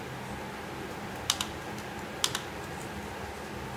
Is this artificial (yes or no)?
no